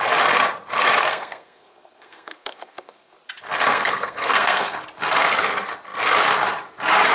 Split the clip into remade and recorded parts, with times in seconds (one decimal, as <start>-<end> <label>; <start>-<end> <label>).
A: 0.0-1.0 recorded; 1.0-3.1 remade; 3.1-3.7 recorded; 3.7-4.8 remade; 4.8-7.1 recorded